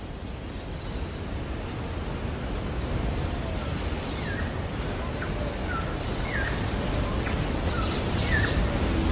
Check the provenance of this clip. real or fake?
real